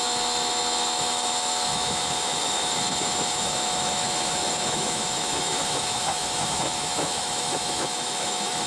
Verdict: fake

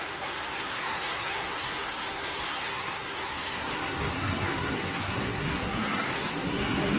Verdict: fake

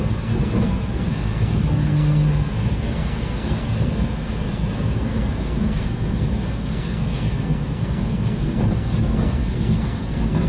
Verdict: fake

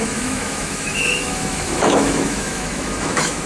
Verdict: fake